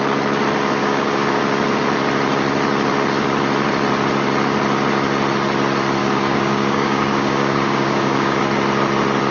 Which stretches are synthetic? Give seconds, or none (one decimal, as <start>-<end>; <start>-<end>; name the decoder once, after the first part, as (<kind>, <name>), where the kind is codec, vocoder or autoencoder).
0.8-1.4 (codec, DAC); 6.0-8.4